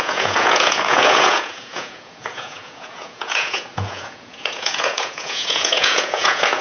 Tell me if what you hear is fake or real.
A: fake